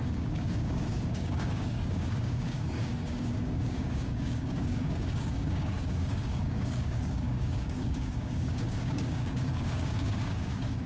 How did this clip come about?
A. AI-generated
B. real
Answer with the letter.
A